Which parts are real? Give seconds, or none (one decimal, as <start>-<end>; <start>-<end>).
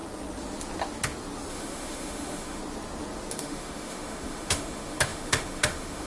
0.0-1.5; 2.6-3.3